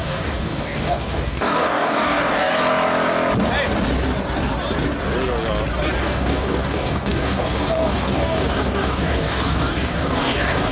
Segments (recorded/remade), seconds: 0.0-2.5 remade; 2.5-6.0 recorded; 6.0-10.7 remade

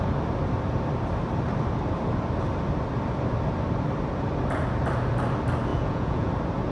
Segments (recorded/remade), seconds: 0.0-5.7 recorded; 5.7-6.3 remade; 6.3-6.7 recorded

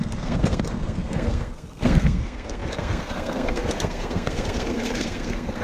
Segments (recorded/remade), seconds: 0.0-5.6 remade

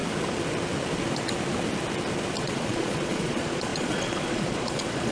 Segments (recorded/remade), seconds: 0.0-2.4 recorded; 2.4-5.1 remade

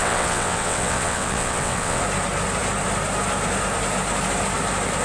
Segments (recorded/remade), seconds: 0.0-2.0 remade; 2.0-5.0 recorded

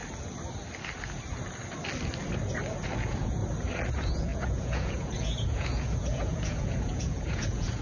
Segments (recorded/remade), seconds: 0.0-3.0 recorded; 3.0-3.4 remade; 3.4-3.9 recorded; 3.9-7.8 remade